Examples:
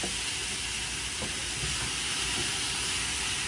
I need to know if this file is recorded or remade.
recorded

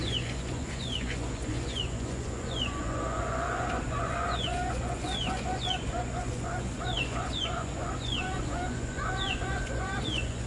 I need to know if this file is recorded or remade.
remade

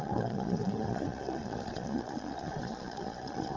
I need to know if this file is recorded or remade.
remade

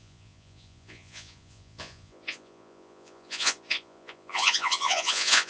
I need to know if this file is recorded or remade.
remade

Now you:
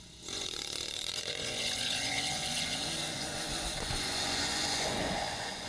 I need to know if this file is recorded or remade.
remade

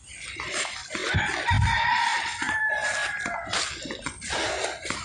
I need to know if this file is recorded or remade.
recorded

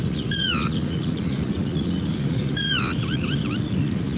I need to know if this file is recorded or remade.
remade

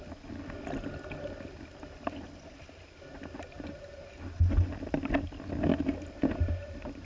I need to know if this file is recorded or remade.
recorded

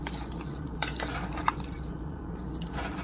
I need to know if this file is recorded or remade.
remade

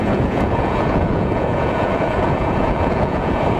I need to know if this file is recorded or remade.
remade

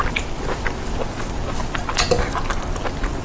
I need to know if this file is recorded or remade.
recorded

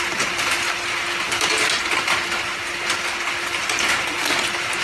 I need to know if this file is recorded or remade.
recorded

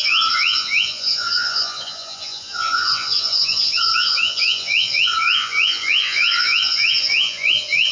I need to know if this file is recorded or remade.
remade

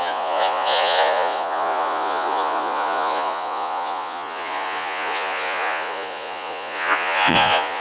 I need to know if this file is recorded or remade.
remade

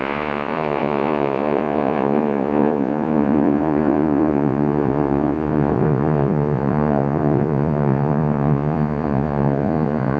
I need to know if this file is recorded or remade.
remade